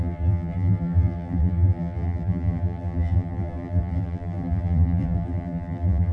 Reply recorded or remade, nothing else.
remade